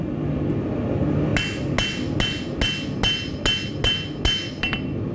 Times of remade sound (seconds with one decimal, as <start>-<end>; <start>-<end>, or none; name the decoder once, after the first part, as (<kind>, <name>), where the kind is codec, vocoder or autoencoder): none